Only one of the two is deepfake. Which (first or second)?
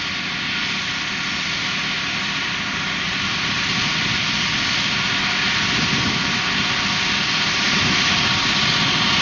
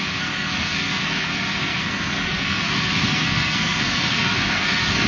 second